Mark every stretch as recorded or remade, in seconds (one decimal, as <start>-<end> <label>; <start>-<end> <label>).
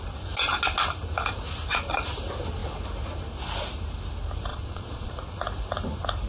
0.0-4.5 recorded; 4.5-5.1 remade; 5.1-6.3 recorded